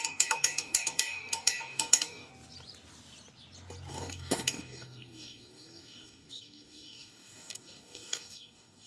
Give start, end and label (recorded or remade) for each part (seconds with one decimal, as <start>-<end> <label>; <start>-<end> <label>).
0.0-2.3 remade; 2.3-3.9 recorded; 3.9-8.9 remade